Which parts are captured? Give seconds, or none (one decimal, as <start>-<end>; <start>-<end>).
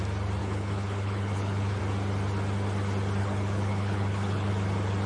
0.0-0.4; 1.8-3.2; 4.5-5.1